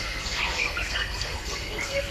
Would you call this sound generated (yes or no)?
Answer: yes